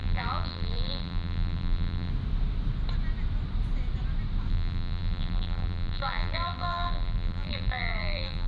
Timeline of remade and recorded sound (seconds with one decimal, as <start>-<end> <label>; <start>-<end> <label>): 0.0-2.1 remade; 2.1-4.5 recorded; 4.5-8.5 remade